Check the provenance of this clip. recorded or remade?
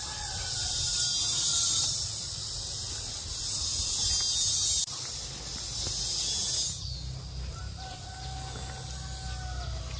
recorded